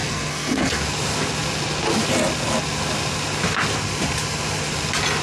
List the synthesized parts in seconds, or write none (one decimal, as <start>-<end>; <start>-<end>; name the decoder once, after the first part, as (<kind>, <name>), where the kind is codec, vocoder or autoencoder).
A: 0.0-0.8 (codec, SNAC)